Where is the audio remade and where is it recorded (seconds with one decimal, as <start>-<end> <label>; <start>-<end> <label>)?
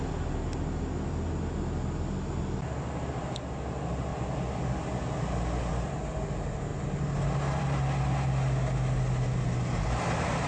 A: 0.0-10.5 recorded